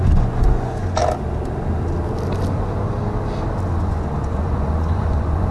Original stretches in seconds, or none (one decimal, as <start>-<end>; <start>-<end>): 1.0-3.8

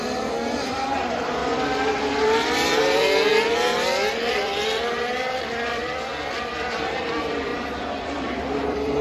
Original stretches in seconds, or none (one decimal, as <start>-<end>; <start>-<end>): 1.4-2.2; 6.1-6.7; 7.5-8.0

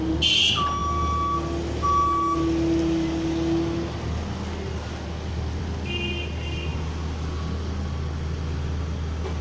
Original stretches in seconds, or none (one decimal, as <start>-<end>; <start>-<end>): 0.0-9.4

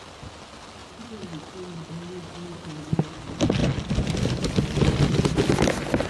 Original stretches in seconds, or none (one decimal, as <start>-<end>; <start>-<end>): 0.0-6.1

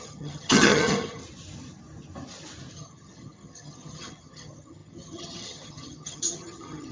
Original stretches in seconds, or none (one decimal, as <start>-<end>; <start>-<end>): 1.2-2.7

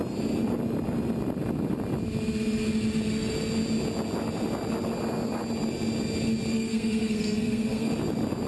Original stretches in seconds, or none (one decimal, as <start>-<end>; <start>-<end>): 0.0-6.5; 7.9-8.5

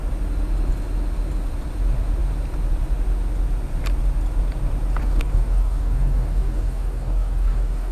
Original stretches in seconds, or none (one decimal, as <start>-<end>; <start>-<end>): 0.0-5.0